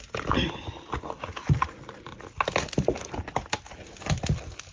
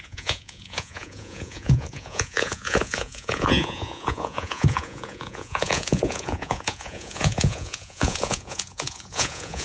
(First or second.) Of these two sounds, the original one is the first